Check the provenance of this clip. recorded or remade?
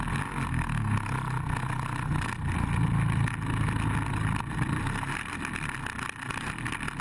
recorded